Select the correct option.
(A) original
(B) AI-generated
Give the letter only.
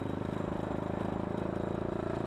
A